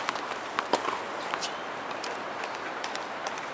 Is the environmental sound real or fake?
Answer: real